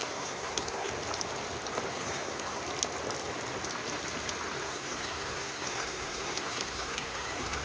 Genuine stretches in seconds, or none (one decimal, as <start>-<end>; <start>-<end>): 0.9-1.9; 2.6-4.6